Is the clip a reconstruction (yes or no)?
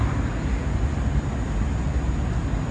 no